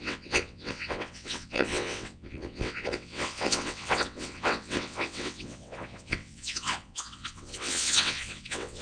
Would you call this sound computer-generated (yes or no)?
yes